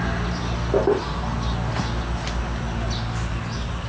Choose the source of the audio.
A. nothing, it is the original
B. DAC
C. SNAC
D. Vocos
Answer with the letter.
A